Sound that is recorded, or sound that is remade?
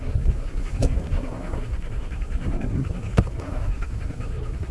remade